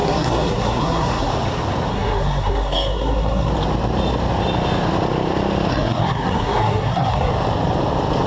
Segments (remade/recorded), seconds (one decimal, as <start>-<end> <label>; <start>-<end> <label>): 0.0-1.3 remade; 1.3-1.9 recorded; 1.9-3.5 remade; 3.5-5.7 recorded; 5.7-7.3 remade; 7.3-8.3 recorded